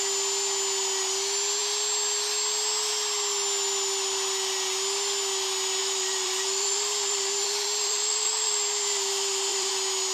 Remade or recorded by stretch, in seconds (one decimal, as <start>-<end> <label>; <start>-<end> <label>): 0.0-5.8 recorded; 5.8-9.7 remade; 9.7-10.1 recorded